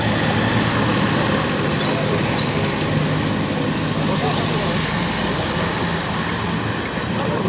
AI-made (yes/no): no